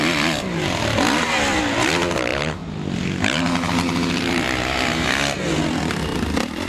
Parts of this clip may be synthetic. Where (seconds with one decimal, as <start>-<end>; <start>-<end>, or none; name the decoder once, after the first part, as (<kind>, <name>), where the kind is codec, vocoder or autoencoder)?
none